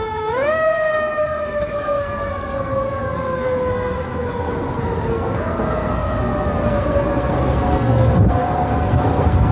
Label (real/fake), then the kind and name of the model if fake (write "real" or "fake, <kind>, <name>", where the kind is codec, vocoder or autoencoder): fake, codec, SNAC